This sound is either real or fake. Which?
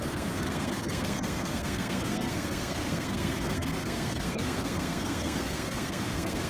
fake